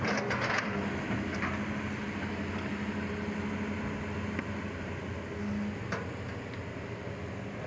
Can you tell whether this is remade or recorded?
recorded